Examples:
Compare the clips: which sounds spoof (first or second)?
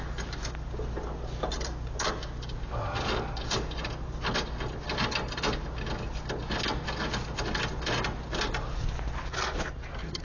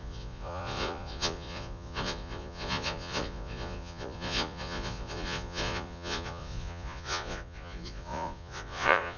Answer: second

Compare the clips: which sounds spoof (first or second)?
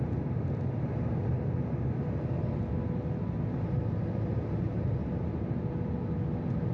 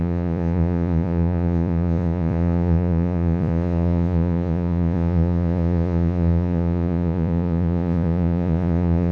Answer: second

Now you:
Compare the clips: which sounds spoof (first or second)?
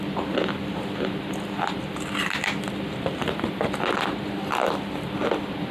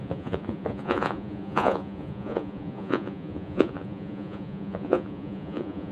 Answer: second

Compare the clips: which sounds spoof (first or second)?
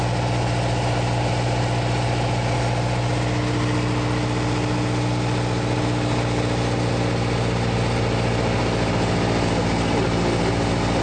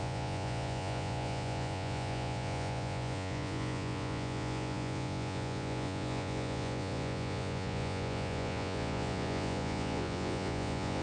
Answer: second